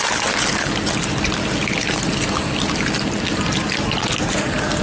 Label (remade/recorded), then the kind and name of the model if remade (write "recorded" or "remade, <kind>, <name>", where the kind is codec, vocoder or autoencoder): recorded